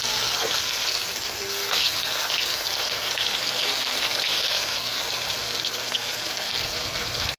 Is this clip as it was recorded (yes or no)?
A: no